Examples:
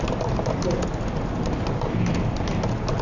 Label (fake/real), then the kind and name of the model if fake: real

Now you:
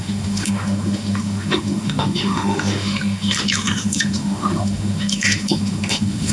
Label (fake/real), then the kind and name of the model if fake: fake, autoencoder, DAC-VAE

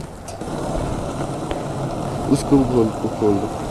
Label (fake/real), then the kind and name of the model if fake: real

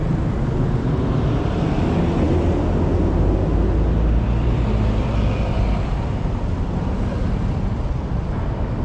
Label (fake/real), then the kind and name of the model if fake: real